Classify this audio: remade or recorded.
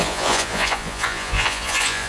remade